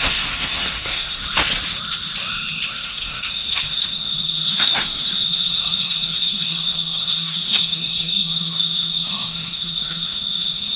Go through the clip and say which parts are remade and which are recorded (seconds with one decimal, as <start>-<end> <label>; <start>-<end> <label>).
0.0-1.2 remade; 1.2-2.7 recorded; 2.7-10.8 remade